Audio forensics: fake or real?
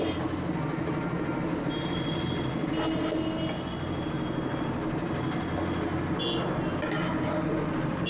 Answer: real